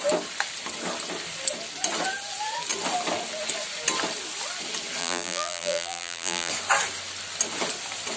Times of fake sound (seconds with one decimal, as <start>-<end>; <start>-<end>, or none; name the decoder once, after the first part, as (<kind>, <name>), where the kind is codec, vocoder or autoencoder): 5.0-6.5 (vocoder, BigVGAN v2)